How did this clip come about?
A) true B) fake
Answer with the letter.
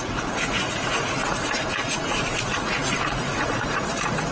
B